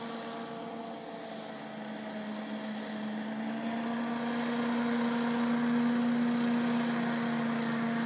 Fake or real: real